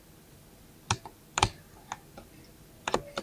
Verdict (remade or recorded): recorded